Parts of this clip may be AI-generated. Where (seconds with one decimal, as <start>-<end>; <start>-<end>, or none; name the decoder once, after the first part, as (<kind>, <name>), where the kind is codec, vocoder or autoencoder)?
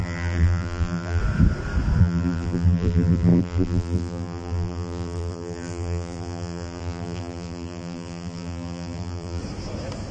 0.0-1.2 (vocoder, BigVGAN v2); 2.0-9.4